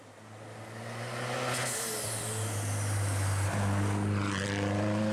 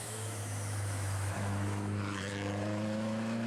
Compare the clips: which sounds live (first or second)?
first